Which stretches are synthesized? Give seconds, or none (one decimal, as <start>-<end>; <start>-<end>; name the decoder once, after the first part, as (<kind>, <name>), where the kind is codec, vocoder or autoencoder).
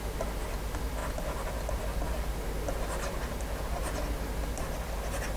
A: none